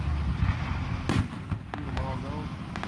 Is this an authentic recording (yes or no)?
yes